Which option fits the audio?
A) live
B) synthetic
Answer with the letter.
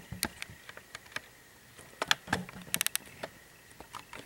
A